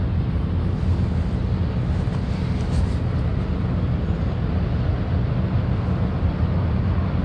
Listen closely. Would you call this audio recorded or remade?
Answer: recorded